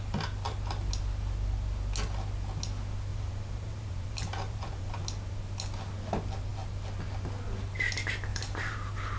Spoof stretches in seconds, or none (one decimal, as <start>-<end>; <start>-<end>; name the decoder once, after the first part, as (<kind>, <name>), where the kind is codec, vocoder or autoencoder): 3.1-5.0 (vocoder, BigVGAN v2); 8.3-9.2